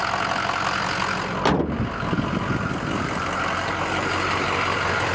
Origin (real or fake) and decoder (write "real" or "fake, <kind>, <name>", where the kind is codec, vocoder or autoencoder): real